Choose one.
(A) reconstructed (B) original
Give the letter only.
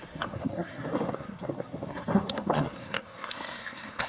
A